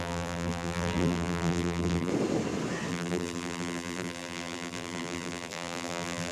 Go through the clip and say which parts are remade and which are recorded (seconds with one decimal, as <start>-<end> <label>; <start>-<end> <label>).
0.0-2.1 remade; 2.1-2.9 recorded; 2.9-6.3 remade